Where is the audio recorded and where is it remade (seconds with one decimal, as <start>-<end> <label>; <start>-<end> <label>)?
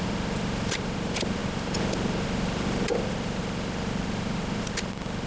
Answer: 0.0-5.3 recorded